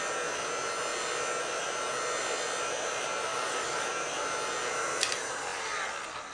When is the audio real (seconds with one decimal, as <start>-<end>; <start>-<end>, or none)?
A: 0.0-3.3; 3.9-6.3